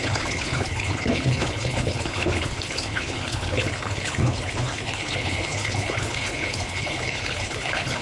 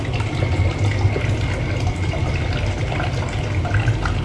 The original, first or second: second